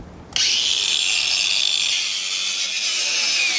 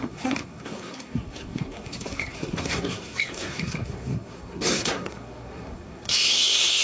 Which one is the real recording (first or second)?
first